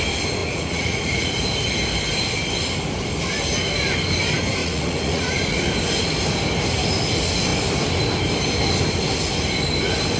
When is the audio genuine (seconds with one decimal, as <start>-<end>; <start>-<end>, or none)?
0.0-0.4; 1.3-4.6; 5.7-10.2